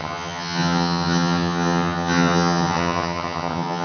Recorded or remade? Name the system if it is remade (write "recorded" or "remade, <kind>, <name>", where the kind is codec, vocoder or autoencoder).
remade, vocoder, HiFi-GAN